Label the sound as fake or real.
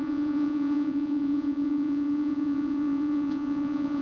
fake